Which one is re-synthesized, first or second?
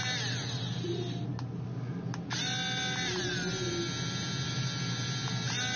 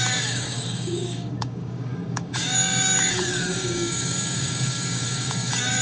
second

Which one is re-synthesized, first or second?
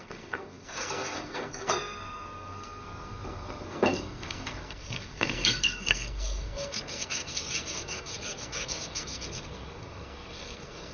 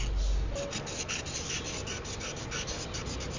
first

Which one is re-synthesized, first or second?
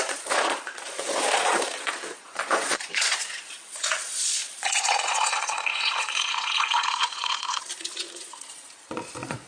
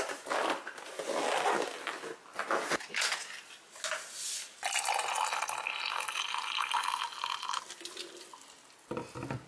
first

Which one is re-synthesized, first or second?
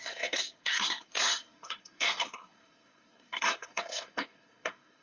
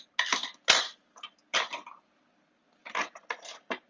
first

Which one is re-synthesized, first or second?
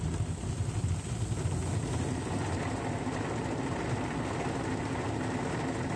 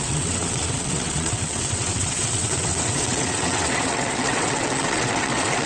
second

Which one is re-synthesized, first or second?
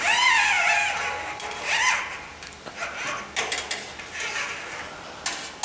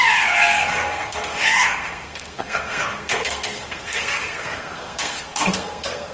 second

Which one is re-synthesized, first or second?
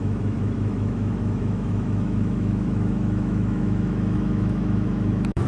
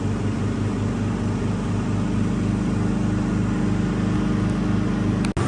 first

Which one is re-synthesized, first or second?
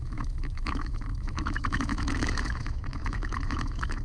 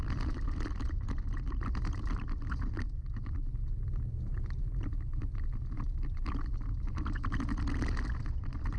first